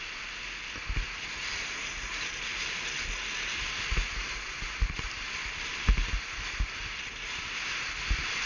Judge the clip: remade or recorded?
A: recorded